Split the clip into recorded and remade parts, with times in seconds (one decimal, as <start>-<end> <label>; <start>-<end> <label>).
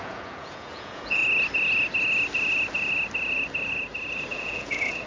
0.0-1.2 remade; 1.2-4.3 recorded; 4.3-5.1 remade